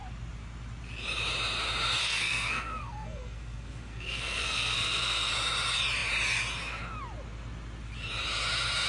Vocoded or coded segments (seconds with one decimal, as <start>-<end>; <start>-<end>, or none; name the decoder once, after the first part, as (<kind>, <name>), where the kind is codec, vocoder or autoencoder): 2.0-5.3 (codec, SNAC)